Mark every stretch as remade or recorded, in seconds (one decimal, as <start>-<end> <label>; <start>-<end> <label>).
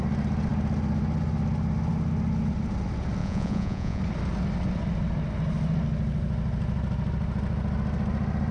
0.0-3.2 recorded; 3.2-4.0 remade; 4.0-8.5 recorded